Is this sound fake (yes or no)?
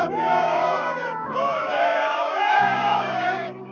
yes